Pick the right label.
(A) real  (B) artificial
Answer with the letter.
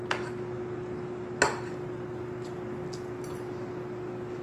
A